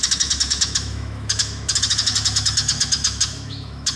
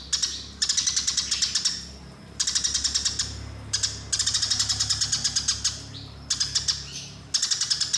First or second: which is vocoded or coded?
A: first